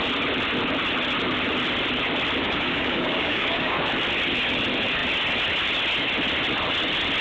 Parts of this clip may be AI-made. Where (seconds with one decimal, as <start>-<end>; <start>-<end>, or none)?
2.4-3.9